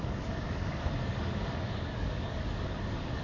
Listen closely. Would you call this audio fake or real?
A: fake